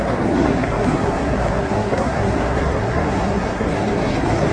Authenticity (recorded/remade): remade